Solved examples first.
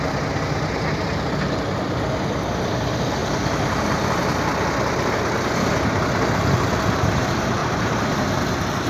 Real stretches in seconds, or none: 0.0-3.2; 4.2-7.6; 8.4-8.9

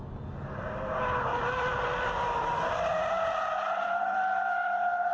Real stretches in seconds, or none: 0.0-1.3; 2.4-2.9; 4.5-5.1

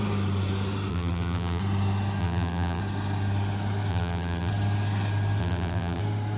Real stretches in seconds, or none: 0.0-0.9; 1.6-2.2; 2.8-3.9; 4.5-5.4; 6.0-6.4

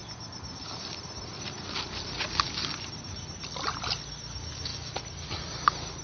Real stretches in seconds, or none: 2.0-6.0

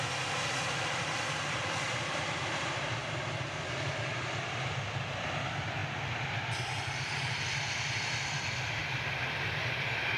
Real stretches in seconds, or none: 3.0-3.9; 8.8-10.2

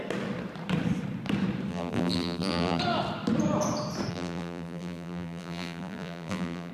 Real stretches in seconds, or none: 0.0-1.7; 2.8-4.1